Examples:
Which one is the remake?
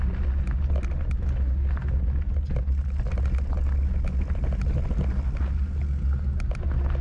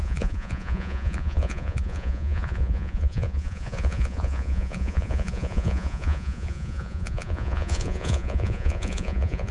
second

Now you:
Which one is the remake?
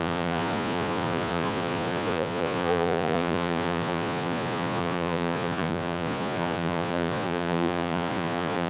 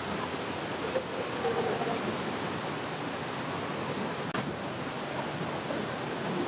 first